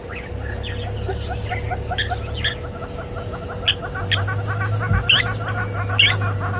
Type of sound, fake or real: real